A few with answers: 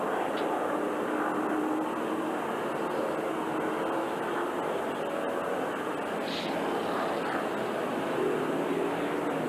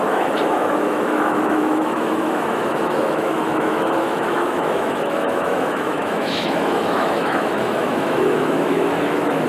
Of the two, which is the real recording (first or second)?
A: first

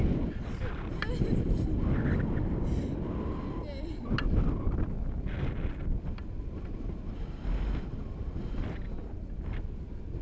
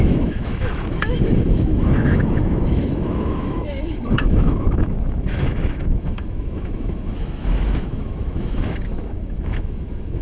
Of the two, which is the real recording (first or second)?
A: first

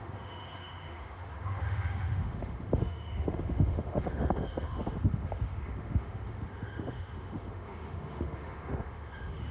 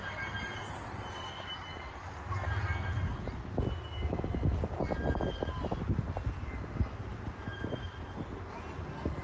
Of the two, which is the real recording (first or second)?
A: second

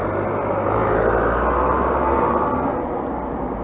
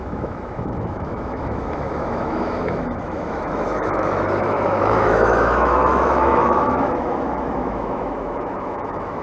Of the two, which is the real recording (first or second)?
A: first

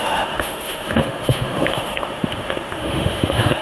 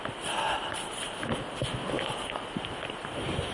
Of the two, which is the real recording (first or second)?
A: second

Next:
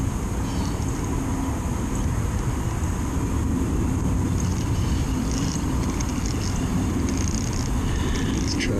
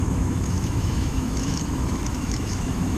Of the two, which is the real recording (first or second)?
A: first